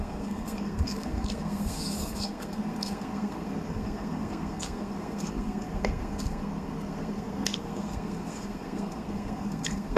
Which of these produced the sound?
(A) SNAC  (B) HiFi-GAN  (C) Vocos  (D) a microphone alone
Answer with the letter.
A